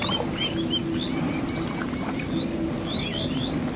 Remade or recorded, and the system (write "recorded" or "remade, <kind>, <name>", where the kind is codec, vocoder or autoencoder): recorded